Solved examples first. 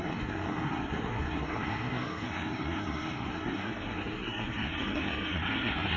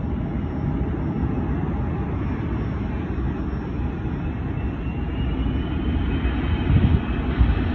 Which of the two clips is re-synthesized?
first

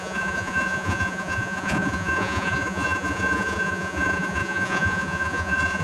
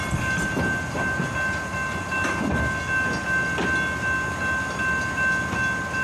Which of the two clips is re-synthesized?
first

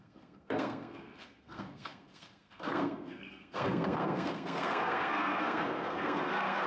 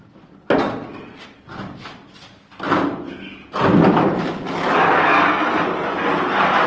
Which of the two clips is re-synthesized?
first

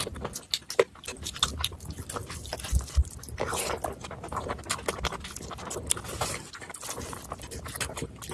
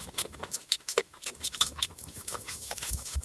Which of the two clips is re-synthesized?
second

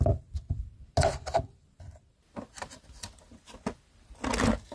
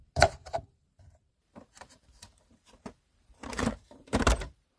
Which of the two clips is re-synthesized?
second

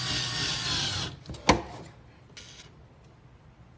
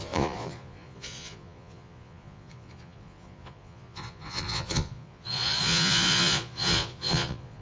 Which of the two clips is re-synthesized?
second